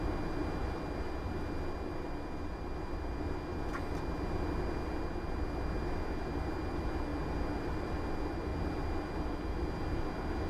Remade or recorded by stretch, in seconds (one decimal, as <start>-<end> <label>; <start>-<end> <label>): 0.0-10.5 recorded